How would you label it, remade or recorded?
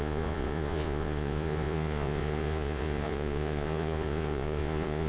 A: remade